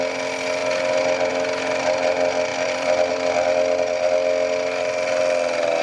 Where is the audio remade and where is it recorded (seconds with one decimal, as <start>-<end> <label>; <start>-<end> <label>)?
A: 0.0-2.5 recorded; 2.5-3.1 remade; 3.1-5.8 recorded